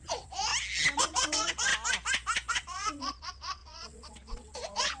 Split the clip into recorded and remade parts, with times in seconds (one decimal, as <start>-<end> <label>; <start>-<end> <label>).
0.0-0.5 remade; 0.5-1.0 recorded; 1.0-1.7 remade; 1.7-2.5 recorded; 2.5-5.0 remade